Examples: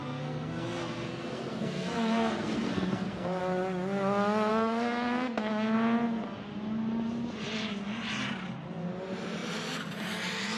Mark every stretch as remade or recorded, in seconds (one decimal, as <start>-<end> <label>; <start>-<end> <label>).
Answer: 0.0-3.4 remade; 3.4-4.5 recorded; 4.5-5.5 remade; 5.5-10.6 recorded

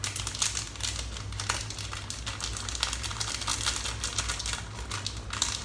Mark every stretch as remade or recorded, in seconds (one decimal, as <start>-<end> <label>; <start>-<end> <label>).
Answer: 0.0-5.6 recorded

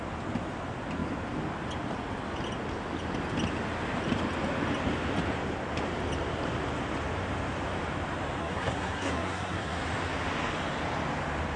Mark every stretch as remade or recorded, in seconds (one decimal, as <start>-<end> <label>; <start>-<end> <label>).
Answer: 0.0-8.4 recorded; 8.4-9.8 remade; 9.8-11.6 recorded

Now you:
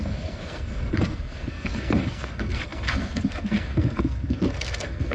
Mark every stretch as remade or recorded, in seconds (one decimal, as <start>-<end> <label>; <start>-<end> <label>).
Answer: 0.0-5.1 remade